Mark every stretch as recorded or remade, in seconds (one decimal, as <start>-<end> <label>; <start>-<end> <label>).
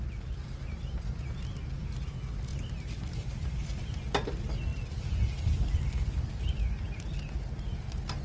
0.0-2.5 recorded; 2.5-4.0 remade; 4.0-8.2 recorded